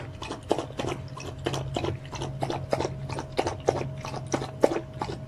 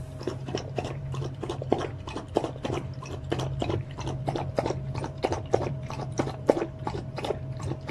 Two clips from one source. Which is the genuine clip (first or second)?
first